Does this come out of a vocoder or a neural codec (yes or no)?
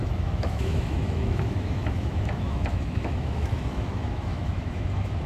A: yes